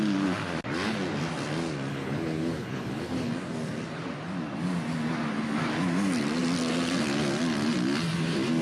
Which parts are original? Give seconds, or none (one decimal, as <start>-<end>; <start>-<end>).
0.0-1.9; 3.3-8.6